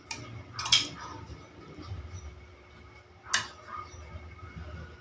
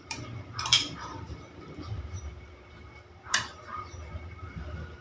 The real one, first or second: first